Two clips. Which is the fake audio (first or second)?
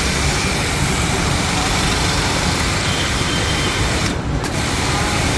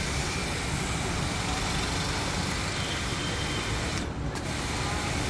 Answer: first